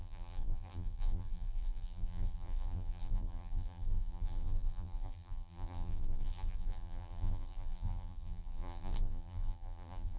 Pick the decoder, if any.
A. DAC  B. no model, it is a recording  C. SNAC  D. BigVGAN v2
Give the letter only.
D